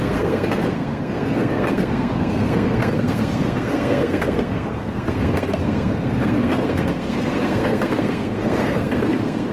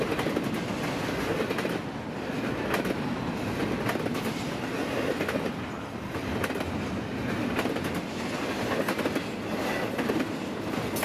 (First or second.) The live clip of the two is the second